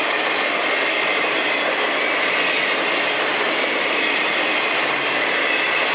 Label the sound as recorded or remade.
recorded